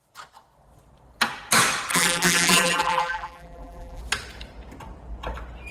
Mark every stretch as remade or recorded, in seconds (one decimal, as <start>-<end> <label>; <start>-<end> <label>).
0.0-1.9 recorded; 1.9-4.0 remade; 4.0-5.7 recorded